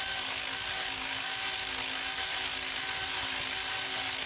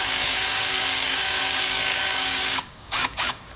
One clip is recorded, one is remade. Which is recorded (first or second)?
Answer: first